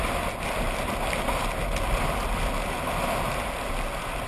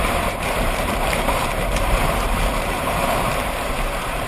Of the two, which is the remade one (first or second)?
second